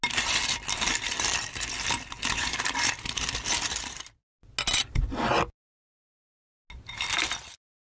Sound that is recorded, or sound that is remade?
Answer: recorded